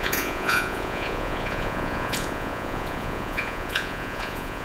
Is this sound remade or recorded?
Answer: remade